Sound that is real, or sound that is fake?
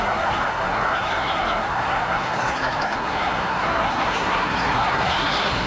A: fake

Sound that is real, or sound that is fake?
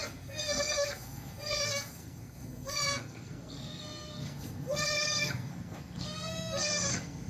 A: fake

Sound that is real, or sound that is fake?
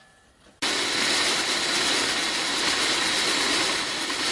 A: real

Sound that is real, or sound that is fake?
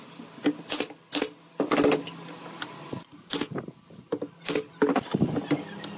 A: real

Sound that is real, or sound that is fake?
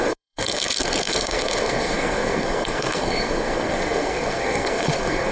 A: fake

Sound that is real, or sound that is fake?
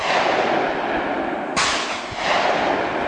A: real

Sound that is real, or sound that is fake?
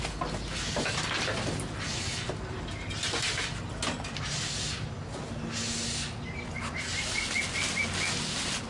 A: real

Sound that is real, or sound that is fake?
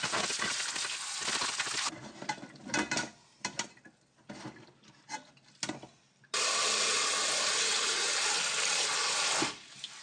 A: real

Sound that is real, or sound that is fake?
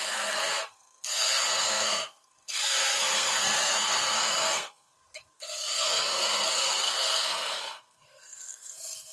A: fake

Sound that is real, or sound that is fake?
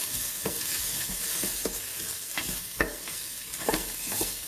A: fake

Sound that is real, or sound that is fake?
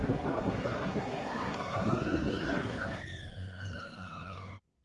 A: fake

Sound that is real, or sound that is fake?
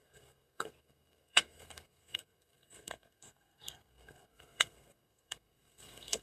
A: fake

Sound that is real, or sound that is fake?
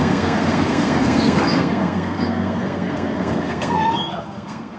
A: fake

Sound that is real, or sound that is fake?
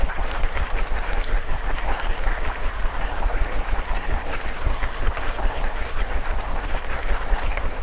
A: fake